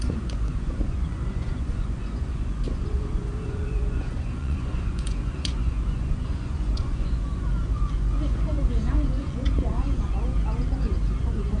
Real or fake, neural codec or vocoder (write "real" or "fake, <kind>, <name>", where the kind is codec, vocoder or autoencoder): fake, vocoder, Vocos